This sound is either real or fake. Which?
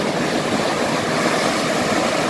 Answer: real